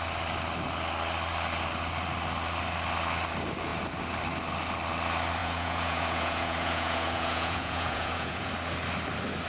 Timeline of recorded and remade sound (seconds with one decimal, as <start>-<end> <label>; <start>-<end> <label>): 0.0-5.4 recorded; 5.4-8.5 remade; 8.5-9.5 recorded